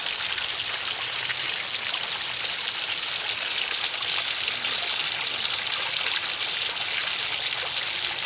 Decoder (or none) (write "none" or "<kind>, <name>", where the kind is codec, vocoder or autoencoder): none